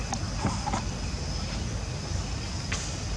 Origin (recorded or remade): recorded